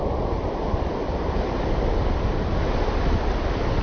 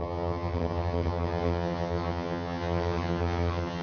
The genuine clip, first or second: first